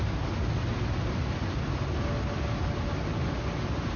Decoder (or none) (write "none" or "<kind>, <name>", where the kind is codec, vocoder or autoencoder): none